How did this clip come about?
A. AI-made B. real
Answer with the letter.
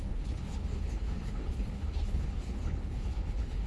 A